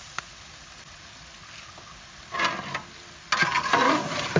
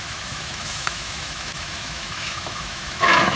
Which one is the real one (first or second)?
first